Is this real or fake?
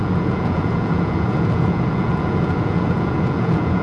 fake